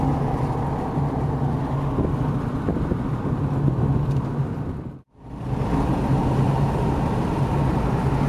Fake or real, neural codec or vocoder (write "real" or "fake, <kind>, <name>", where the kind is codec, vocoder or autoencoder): real